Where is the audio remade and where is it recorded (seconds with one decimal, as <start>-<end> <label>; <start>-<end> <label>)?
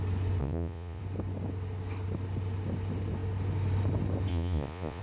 0.0-0.4 recorded; 0.4-1.0 remade; 1.0-4.3 recorded; 4.3-5.0 remade